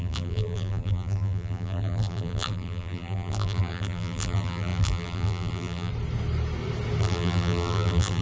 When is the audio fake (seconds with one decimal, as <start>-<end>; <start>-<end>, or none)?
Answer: 0.0-5.9; 7.0-8.2